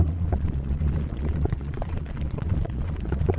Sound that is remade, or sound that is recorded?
remade